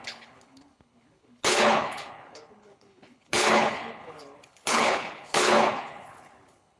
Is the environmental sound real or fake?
fake